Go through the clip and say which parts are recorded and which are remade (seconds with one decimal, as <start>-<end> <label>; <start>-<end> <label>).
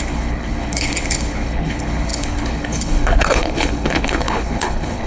0.0-5.1 remade